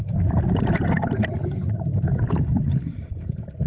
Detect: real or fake real